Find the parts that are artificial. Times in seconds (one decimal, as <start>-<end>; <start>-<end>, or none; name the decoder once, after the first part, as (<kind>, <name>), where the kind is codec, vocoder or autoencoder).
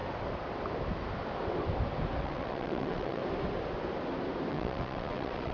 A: 2.2-3.2 (vocoder, WaveNeXt); 4.5-5.5